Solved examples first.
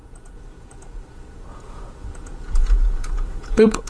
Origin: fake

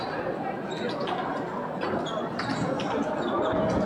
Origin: real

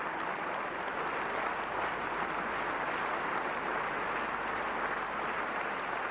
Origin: real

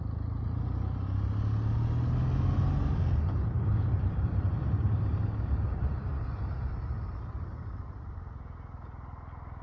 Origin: real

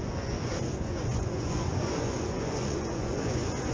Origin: fake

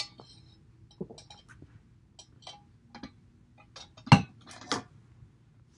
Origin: real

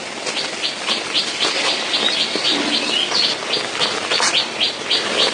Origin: real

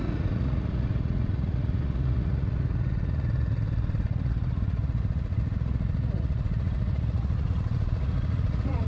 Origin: fake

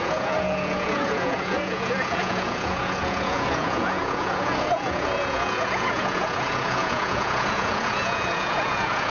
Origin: fake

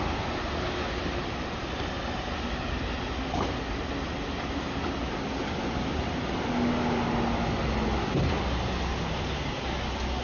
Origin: real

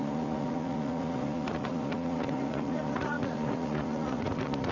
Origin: fake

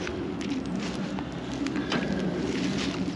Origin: real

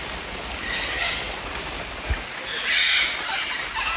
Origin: real